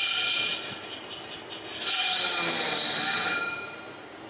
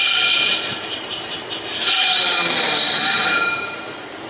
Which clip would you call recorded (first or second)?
first